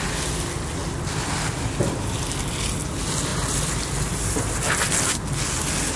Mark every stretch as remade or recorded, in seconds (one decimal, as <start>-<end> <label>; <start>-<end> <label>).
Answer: 0.0-6.0 recorded